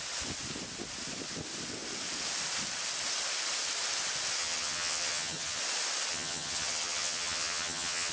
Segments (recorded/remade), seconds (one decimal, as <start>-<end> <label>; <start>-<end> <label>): 0.0-4.4 recorded; 4.4-5.6 remade; 5.6-6.1 recorded; 6.1-8.1 remade